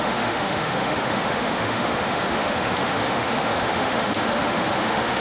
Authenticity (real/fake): fake